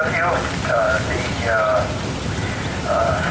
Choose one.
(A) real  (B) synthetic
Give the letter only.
A